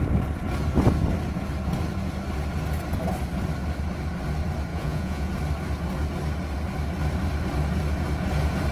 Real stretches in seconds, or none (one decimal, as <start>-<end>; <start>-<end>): 0.0-4.7; 5.3-8.7